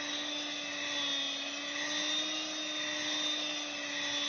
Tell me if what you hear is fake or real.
real